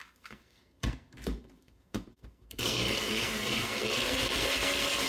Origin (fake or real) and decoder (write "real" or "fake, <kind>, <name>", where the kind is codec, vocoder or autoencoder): fake, codec, SNAC